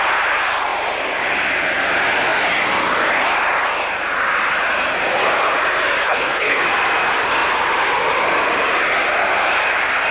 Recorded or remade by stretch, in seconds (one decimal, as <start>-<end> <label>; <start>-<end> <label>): 0.0-6.0 recorded; 6.0-6.6 remade; 6.6-10.1 recorded